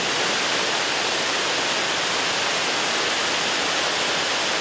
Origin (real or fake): real